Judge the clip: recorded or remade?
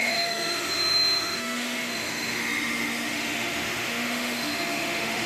remade